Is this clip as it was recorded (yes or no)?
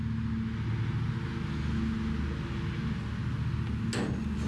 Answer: yes